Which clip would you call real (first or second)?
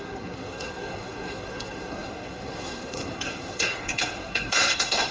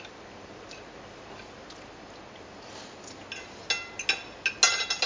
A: second